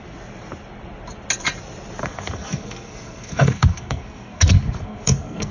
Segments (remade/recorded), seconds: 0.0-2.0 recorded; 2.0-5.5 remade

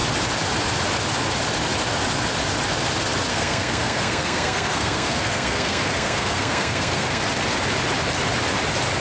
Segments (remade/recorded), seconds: 0.0-3.3 recorded; 3.3-7.2 remade; 7.2-9.0 recorded

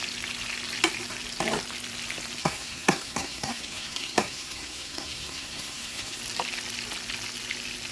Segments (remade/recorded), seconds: 0.0-2.4 recorded; 2.4-6.2 remade; 6.2-7.9 recorded

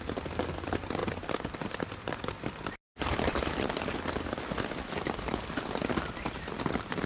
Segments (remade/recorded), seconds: 0.0-7.1 recorded

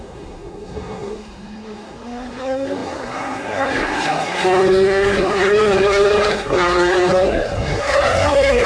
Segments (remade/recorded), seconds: 0.0-8.7 remade

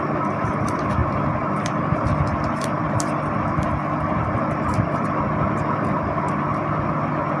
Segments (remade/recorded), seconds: 0.0-7.4 recorded

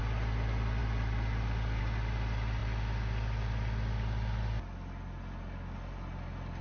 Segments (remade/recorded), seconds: 0.0-6.6 recorded